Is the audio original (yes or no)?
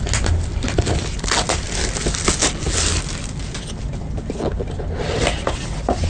yes